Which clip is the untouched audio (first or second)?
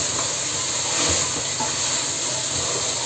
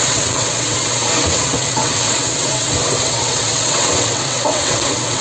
first